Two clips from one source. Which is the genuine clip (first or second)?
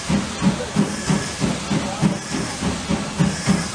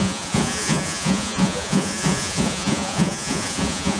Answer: first